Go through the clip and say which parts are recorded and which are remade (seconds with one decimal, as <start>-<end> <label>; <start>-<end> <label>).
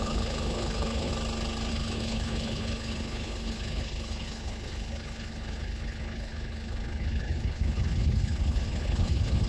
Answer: 0.0-1.1 remade; 1.1-1.7 recorded; 1.7-9.5 remade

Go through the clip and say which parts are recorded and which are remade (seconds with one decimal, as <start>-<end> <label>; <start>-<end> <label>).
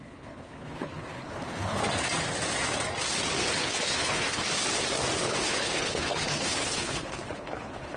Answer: 0.0-1.8 remade; 1.8-3.4 recorded; 3.4-4.4 remade; 4.4-5.2 recorded; 5.2-8.0 remade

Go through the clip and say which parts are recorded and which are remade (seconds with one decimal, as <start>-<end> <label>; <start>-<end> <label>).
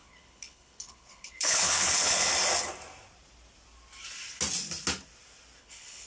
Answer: 0.0-2.3 remade; 2.3-5.6 recorded; 5.6-6.1 remade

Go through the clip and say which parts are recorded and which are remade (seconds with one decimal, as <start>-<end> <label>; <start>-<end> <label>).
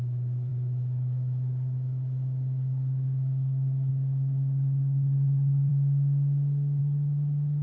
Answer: 0.0-5.7 remade; 5.7-6.8 recorded; 6.8-7.6 remade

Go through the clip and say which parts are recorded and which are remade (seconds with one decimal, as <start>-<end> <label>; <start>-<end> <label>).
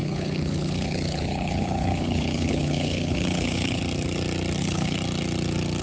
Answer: 0.0-3.8 remade; 3.8-4.6 recorded; 4.6-5.0 remade; 5.0-5.8 recorded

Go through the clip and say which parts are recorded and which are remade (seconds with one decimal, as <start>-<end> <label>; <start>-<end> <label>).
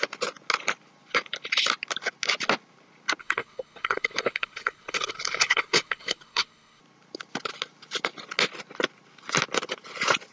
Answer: 0.0-3.2 recorded; 3.2-6.8 remade; 6.8-10.3 recorded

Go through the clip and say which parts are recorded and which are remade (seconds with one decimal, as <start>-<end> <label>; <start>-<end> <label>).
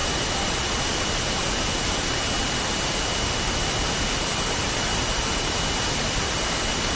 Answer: 0.0-7.0 recorded